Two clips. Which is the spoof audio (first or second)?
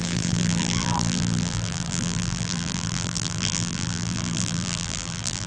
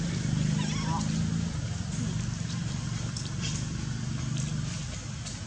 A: first